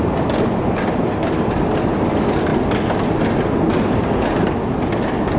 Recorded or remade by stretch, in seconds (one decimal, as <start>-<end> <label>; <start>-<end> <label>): 0.0-5.4 recorded